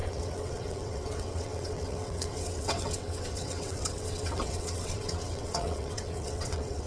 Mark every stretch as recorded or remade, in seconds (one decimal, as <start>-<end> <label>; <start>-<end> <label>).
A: 0.0-6.9 remade